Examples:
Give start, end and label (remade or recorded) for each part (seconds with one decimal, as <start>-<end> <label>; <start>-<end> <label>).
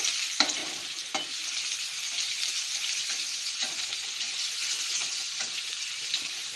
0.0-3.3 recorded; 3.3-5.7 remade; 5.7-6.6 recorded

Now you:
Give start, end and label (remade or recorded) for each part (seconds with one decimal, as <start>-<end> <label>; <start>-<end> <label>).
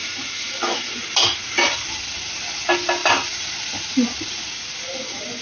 0.0-0.9 remade; 0.9-5.4 recorded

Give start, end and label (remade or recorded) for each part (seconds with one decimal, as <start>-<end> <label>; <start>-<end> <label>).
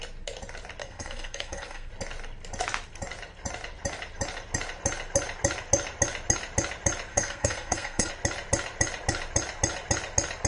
0.0-0.8 recorded; 0.8-1.9 remade; 1.9-7.1 recorded; 7.1-8.1 remade; 8.1-10.5 recorded